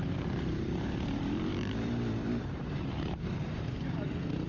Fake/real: fake